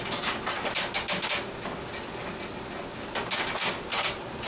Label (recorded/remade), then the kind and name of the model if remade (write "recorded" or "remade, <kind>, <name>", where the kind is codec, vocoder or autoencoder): recorded